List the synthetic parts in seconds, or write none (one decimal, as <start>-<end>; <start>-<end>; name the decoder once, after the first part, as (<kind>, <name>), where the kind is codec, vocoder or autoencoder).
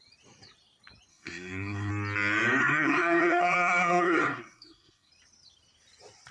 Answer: 1.1-1.9 (codec, SNAC); 2.6-5.1